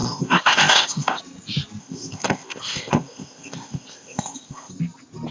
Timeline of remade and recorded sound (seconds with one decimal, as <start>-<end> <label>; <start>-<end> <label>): 0.0-1.2 remade; 1.2-1.8 recorded; 1.8-4.7 remade; 4.7-5.3 recorded